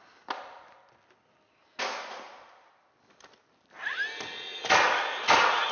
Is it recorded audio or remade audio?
recorded